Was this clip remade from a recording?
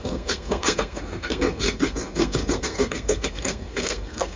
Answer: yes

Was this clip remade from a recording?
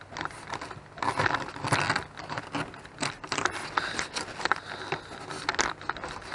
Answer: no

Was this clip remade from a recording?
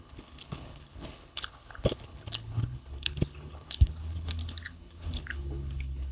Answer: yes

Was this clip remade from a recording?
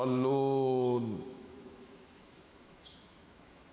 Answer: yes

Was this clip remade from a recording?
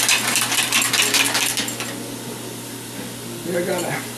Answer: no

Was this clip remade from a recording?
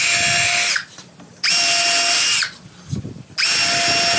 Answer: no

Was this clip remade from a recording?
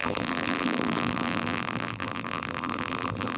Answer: yes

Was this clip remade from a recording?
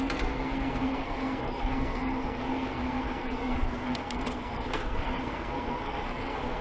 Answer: yes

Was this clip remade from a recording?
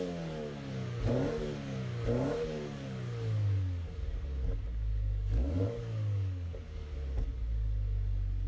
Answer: yes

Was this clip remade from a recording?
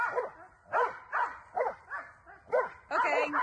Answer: no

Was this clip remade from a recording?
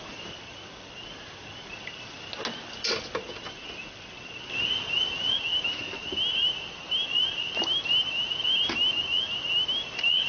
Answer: no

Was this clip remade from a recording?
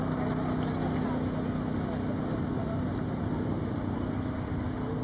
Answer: no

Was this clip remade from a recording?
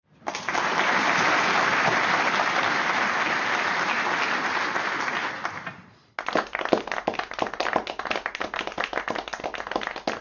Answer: no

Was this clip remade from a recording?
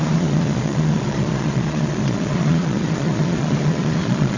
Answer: yes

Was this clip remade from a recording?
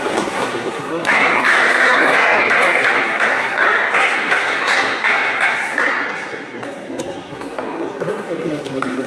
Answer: yes